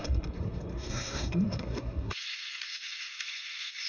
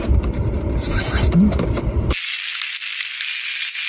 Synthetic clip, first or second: first